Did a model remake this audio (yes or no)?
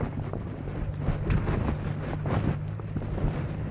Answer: no